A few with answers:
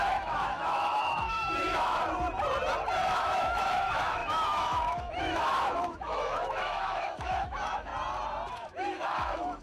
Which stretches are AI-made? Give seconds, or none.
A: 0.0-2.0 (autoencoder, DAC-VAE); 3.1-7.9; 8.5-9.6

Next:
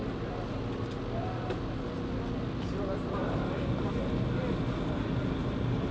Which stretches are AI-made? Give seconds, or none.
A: 3.2-4.0 (vocoder, BigVGAN v2)

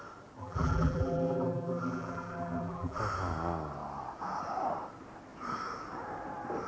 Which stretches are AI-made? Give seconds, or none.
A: 0.4-3.0 (vocoder, BigVGAN v2)

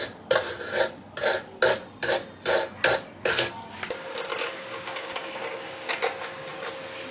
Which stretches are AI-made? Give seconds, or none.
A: 4.3-6.0 (codec, DAC)

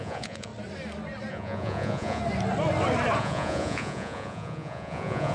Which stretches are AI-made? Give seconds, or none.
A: 0.0-0.5 (vocoder, Vocos); 1.3-2.2; 3.2-5.3

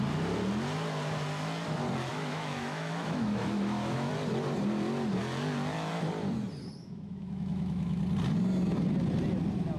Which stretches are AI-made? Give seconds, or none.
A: 2.1-4.1 (autoencoder, DAC-VAE); 6.8-8.0

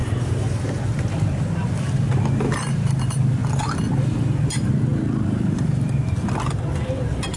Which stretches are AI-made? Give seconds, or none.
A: 2.5-3.4 (vocoder, BigVGAN v2); 4.5-7.4